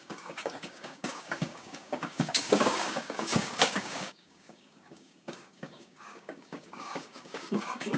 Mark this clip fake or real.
fake